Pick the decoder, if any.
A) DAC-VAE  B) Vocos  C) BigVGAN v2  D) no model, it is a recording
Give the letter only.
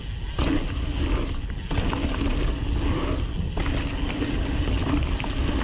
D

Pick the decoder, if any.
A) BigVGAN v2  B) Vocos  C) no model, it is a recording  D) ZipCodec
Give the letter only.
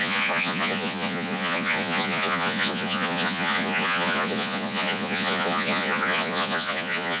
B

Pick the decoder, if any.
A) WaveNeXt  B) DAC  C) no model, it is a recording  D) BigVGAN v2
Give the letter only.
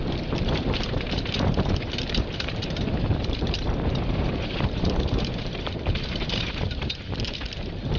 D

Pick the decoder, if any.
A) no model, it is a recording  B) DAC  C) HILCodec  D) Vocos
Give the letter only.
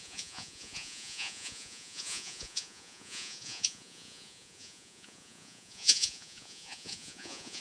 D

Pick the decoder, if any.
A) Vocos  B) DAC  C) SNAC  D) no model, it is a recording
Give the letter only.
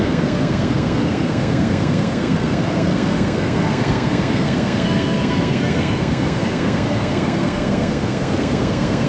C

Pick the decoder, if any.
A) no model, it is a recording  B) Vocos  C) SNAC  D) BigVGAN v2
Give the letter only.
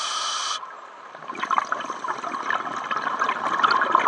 A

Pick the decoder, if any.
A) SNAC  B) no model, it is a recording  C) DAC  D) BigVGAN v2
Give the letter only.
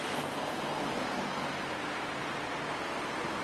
B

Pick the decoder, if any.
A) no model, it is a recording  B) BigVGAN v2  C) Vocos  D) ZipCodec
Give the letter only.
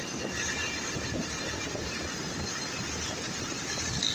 A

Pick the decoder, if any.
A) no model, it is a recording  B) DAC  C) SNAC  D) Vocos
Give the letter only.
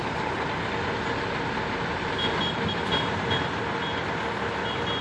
A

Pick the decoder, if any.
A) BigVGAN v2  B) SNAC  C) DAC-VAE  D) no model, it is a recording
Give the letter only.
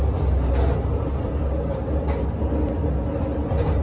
D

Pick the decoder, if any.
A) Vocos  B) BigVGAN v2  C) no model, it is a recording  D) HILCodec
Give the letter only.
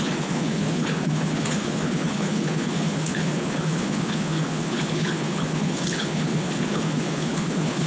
D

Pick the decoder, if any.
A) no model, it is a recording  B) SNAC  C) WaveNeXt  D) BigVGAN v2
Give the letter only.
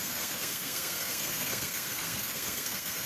B